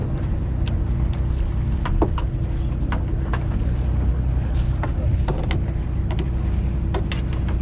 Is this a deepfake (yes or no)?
no